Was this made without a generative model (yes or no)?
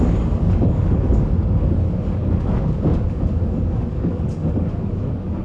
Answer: no